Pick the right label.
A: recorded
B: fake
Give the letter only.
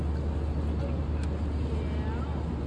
A